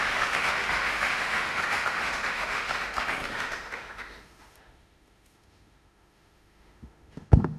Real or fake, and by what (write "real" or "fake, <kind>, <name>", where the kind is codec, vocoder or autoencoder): fake, autoencoder, DAC-VAE